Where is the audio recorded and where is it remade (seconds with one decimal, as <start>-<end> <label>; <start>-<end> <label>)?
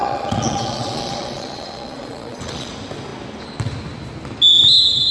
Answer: 0.0-2.7 remade; 2.7-5.1 recorded